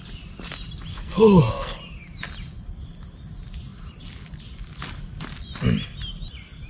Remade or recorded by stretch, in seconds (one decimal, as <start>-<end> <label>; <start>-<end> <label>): 0.0-0.9 recorded; 0.9-1.8 remade; 1.8-6.7 recorded